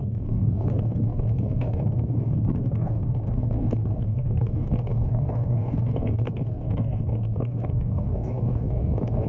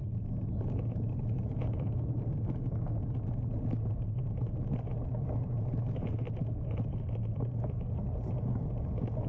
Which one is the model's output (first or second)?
first